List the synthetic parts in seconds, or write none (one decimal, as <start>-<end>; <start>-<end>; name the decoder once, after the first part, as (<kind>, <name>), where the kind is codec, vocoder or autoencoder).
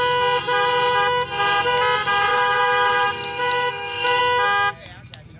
2.3-4.2 (autoencoder, DAC-VAE)